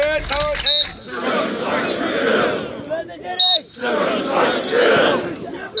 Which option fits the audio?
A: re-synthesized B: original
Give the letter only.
B